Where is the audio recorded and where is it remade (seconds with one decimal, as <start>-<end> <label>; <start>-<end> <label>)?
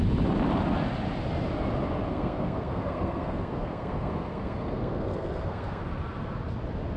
0.0-2.1 recorded; 2.1-5.8 remade; 5.8-7.0 recorded